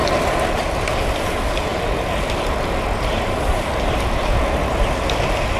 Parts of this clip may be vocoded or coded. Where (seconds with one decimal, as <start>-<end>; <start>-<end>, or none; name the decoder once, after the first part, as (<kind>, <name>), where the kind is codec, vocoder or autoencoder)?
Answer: none